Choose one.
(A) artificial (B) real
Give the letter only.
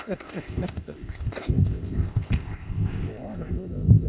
A